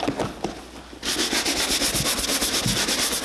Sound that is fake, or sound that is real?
real